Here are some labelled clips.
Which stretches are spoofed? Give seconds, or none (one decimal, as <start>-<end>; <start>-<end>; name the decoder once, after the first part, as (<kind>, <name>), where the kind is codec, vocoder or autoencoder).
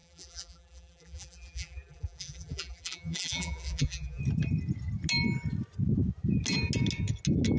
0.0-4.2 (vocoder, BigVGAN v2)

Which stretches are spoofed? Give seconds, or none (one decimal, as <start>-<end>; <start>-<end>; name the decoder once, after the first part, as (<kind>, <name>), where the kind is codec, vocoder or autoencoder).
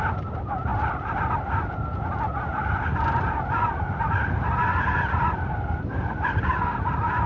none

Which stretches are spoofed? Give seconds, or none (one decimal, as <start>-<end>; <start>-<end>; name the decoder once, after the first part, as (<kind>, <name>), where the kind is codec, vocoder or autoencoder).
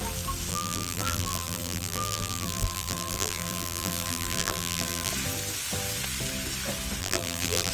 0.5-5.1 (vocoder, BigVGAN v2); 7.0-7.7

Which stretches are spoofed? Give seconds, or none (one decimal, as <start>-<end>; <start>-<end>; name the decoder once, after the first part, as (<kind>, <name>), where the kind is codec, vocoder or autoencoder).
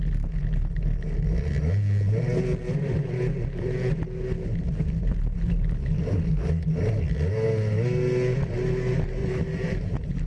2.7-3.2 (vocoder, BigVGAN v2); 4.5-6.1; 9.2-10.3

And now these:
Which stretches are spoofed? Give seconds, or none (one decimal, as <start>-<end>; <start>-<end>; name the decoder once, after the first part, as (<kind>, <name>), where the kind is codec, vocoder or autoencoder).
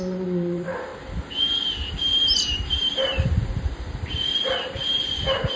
0.0-0.9 (vocoder, BigVGAN v2); 1.9-5.6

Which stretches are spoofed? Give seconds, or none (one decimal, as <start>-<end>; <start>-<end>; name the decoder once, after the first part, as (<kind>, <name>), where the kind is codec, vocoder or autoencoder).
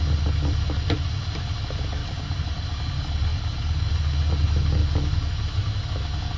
2.0-2.7 (vocoder, BigVGAN v2); 3.3-3.9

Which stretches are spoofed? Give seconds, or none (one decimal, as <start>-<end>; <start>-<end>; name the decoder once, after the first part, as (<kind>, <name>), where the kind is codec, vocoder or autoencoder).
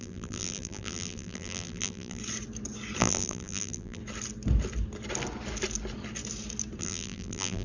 0.0-2.2 (vocoder, BigVGAN v2); 3.0-4.0; 6.8-7.6